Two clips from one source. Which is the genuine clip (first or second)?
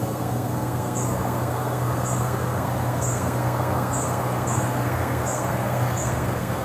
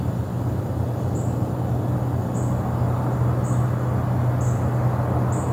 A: second